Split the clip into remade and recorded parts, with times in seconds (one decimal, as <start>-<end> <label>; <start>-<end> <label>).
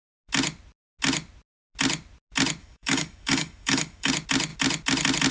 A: 0.0-2.6 recorded; 2.6-4.1 remade; 4.1-5.3 recorded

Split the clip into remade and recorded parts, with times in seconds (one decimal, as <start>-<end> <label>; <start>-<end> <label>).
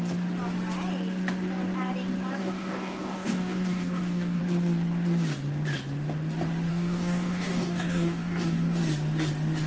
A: 0.0-2.4 recorded; 2.4-4.4 remade; 4.4-6.7 recorded; 6.7-8.8 remade; 8.8-9.7 recorded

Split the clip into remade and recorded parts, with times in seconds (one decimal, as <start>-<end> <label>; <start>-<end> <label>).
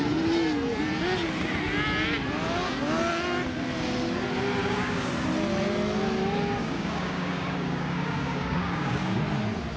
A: 0.0-4.6 recorded; 4.6-5.1 remade; 5.1-6.6 recorded; 6.6-9.2 remade; 9.2-9.8 recorded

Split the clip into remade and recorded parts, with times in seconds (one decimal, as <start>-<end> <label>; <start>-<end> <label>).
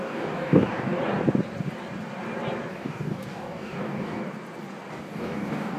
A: 0.0-1.0 remade; 1.0-2.7 recorded; 2.7-4.2 remade; 4.2-4.9 recorded; 4.9-5.8 remade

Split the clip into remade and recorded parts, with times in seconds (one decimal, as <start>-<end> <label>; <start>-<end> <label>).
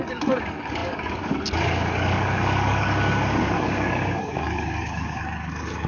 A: 0.0-5.9 remade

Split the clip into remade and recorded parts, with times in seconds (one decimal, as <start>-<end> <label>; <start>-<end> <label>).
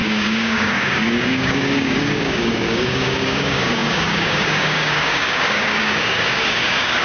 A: 0.0-7.0 remade